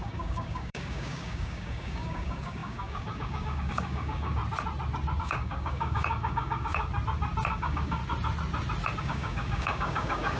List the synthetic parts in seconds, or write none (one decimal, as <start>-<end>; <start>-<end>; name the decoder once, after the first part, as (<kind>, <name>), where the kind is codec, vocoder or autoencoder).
0.0-4.4 (codec, DAC); 5.2-6.9; 7.5-8.0; 9.0-10.4